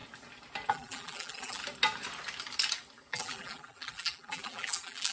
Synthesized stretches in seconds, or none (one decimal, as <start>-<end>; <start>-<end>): 0.7-1.6; 3.1-5.1